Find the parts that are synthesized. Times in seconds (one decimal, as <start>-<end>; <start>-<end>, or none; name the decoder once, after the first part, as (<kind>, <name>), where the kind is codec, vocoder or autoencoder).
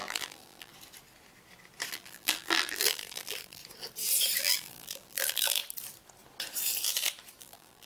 0.0-0.7 (vocoder, BigVGAN v2); 1.9-3.6; 4.4-5.6; 7.4-7.9